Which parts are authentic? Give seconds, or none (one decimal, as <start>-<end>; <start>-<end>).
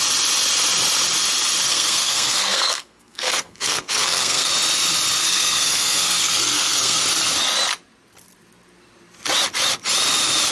0.0-1.7; 4.5-5.2; 7.0-10.5